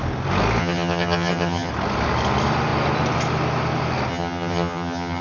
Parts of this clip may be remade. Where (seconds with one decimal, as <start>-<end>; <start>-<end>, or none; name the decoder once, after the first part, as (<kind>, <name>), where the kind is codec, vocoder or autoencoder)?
0.6-1.7 (vocoder, HiFi-GAN); 4.1-5.2